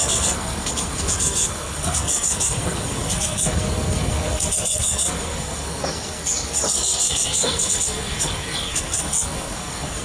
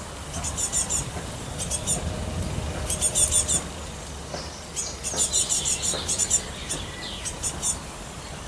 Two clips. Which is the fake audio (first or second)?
first